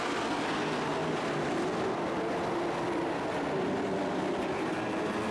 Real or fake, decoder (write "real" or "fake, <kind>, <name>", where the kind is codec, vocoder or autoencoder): real